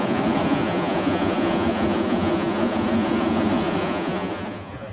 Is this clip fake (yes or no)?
yes